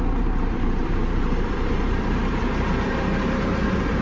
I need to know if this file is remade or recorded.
remade